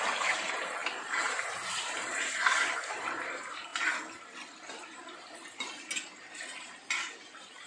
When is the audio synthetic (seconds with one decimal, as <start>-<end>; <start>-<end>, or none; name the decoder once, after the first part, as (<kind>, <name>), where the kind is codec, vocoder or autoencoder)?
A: 0.0-3.7 (vocoder, BigVGAN v2); 6.6-7.7